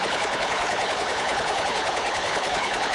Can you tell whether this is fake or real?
fake